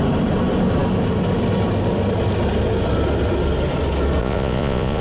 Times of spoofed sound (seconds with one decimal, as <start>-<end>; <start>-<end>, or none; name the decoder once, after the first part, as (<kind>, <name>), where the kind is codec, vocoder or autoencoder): 4.2-5.0 (vocoder, Vocos)